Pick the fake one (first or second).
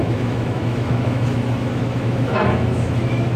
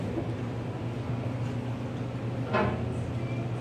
first